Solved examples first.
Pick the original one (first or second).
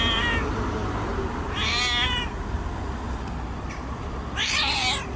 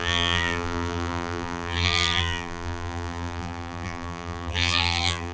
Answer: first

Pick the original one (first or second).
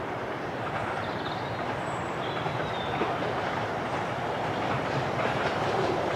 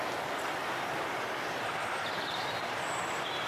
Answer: second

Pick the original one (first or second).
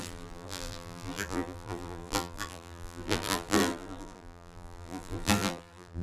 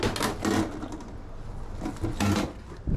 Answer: second